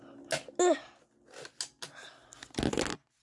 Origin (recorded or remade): recorded